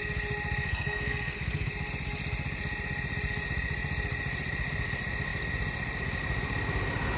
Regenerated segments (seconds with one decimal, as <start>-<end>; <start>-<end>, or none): 0.7-1.7

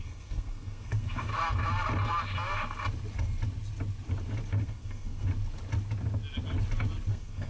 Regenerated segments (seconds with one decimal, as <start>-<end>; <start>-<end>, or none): 0.0-1.3; 4.6-5.3; 7.1-7.5

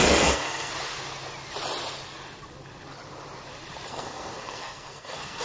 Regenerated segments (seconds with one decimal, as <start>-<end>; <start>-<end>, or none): 0.0-0.7; 3.9-5.4

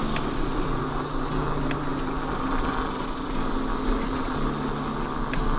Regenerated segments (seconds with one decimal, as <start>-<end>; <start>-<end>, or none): none